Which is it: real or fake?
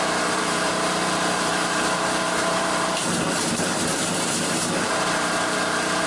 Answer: fake